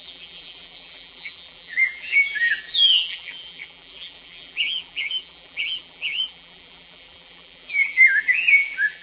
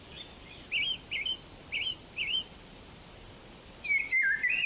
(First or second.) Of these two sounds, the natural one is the second